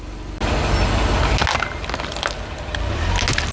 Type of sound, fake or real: real